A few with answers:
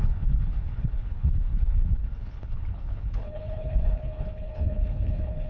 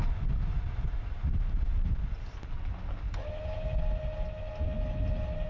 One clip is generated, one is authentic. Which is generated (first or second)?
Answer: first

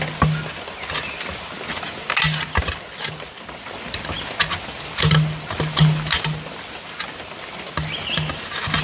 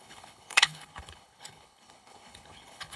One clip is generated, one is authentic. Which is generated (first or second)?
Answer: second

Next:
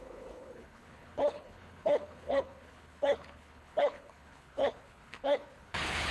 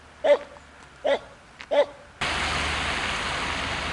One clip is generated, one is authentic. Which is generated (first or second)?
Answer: first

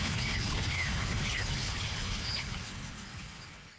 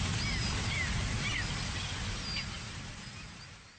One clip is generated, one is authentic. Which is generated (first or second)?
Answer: first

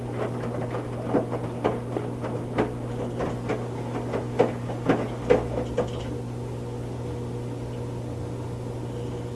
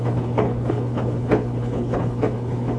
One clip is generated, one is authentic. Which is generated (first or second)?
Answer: second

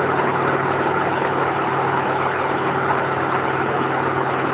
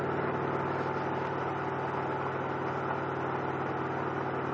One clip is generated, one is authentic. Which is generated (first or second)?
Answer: first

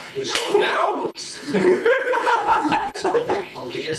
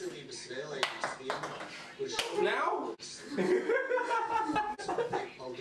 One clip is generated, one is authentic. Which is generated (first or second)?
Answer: first